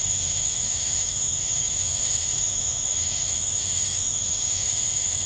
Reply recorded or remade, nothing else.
remade